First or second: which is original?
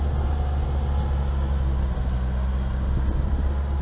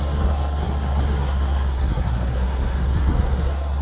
first